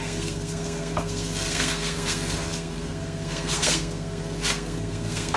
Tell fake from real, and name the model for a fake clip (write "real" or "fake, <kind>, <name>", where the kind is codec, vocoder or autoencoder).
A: fake, codec, SNAC